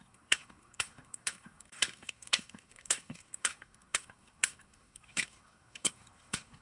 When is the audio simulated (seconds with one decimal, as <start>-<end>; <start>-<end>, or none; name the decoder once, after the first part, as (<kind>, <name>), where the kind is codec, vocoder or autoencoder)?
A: 0.0-6.6 (codec, SNAC)